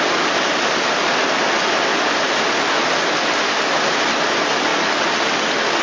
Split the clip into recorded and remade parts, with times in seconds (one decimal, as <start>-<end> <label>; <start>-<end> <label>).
0.0-5.8 recorded